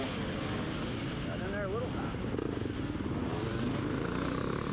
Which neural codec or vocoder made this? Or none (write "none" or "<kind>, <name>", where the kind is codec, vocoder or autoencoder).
none